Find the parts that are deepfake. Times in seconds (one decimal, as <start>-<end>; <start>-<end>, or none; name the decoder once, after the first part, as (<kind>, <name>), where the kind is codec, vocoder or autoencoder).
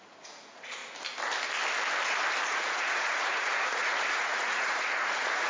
0.0-0.8 (vocoder, Vocos); 2.4-5.5